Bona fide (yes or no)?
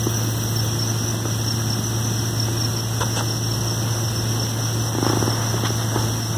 yes